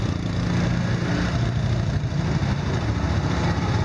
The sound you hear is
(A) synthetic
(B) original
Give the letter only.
B